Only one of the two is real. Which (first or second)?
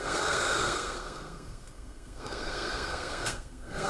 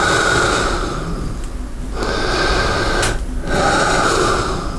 second